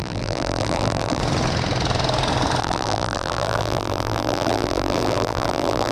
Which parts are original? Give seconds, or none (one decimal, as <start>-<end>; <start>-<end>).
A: 1.2-2.6